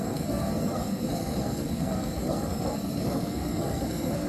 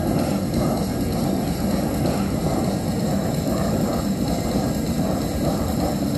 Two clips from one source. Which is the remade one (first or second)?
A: first